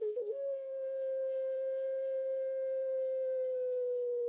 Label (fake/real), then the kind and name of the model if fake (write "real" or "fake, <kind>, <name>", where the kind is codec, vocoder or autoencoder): fake, codec, SNAC